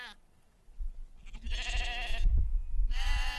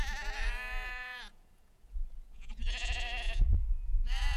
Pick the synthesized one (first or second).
second